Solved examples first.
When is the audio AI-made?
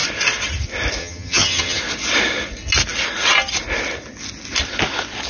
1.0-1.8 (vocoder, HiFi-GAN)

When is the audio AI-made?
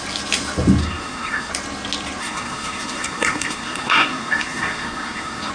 0.8-1.5 (codec, SNAC); 2.2-5.5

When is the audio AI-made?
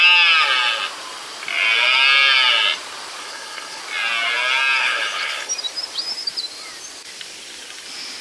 3.2-3.8 (codec, HILCodec); 4.8-5.5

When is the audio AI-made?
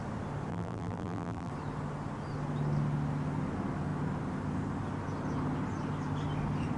0.5-1.5 (vocoder, BigVGAN v2)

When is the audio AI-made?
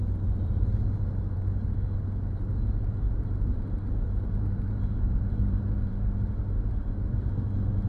0.0-1.6 (vocoder, BigVGAN v2); 2.9-7.9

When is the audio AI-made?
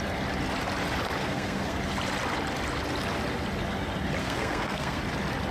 1.2-1.8 (codec, SNAC); 4.2-5.0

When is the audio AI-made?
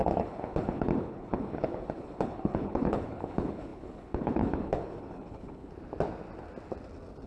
0.0-5.7 (codec, HILCodec)